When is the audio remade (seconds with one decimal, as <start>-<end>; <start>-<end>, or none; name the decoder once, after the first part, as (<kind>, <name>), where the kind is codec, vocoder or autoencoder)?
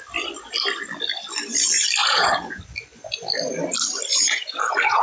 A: 2.0-2.6 (vocoder, Vocos); 4.1-5.0